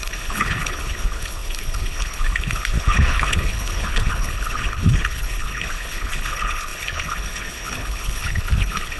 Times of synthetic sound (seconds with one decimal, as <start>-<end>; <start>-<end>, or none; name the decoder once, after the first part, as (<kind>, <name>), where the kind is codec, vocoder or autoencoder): 0.0-9.0 (codec, HILCodec)

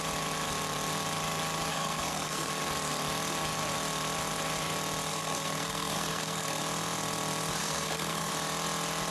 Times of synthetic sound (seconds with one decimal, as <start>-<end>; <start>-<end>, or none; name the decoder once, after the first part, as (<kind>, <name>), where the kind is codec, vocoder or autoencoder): 1.7-2.5 (codec, SNAC); 5.1-6.6; 7.6-8.3

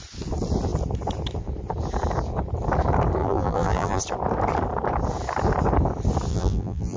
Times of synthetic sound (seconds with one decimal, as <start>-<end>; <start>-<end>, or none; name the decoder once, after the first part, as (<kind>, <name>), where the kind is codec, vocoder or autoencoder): 3.2-4.0 (vocoder, BigVGAN v2); 6.3-7.0